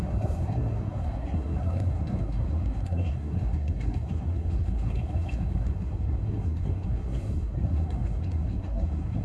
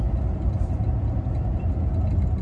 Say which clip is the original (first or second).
second